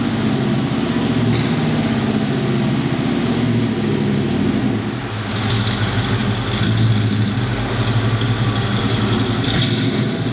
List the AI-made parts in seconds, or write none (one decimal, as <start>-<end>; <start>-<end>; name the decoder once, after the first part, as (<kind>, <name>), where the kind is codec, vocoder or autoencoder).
none